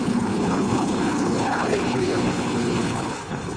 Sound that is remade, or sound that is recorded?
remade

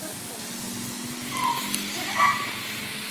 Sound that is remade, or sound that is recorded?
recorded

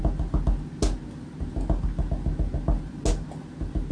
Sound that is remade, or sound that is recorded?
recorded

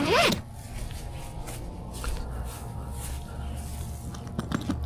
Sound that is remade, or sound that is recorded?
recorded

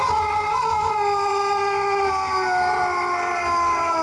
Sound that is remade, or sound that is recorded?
recorded